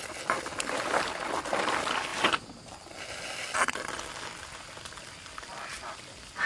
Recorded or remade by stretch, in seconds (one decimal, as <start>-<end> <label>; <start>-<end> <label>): 0.0-6.5 recorded